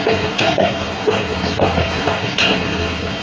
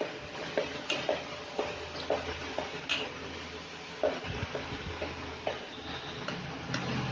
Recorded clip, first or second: second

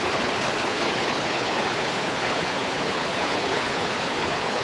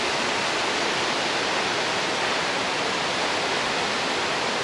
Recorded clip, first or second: second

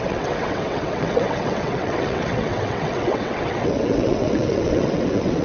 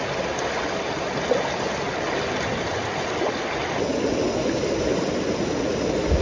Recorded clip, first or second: second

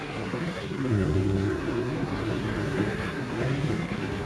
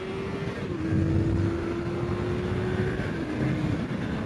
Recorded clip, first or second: second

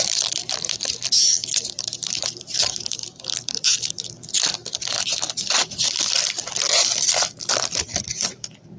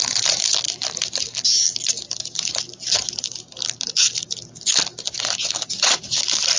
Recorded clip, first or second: second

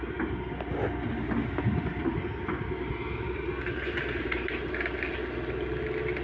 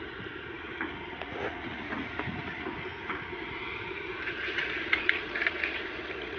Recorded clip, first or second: first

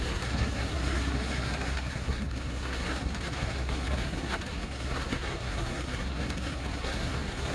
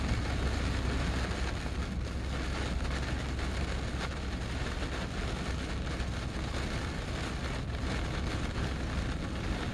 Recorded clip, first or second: second